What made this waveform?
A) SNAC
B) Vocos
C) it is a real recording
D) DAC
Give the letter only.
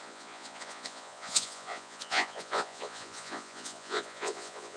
B